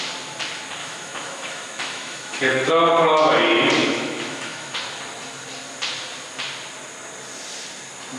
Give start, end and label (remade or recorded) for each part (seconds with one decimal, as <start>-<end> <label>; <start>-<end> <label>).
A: 0.0-0.8 recorded; 0.8-2.7 remade; 2.7-3.8 recorded; 3.8-4.8 remade; 4.8-8.2 recorded